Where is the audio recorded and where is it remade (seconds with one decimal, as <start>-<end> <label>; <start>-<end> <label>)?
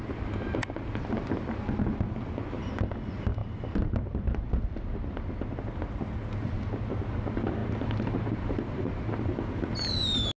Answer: 0.0-3.4 recorded; 3.4-4.5 remade; 4.5-7.6 recorded; 7.6-9.1 remade; 9.1-10.4 recorded